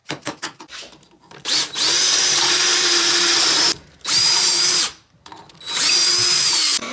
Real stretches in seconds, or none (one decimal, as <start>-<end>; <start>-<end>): 5.3-6.1